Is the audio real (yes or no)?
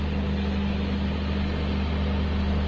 yes